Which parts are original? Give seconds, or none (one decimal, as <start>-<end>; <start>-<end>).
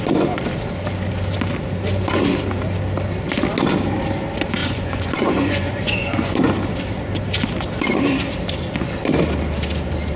0.0-4.6; 6.5-10.2